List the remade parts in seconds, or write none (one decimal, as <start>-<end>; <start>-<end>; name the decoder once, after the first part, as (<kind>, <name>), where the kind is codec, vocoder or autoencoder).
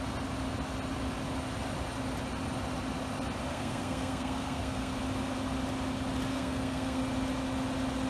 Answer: 3.5-5.0 (codec, SNAC); 6.3-7.0